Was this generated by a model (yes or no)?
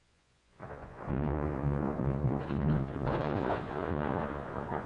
yes